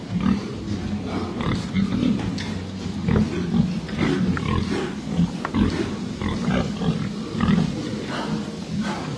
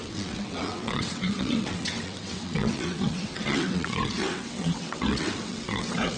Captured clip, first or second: first